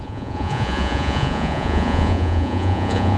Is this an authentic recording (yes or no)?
no